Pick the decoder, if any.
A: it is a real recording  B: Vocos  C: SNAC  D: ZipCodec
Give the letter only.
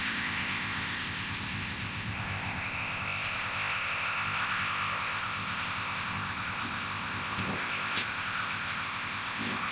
D